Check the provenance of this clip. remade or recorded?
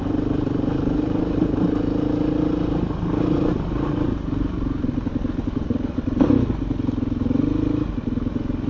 recorded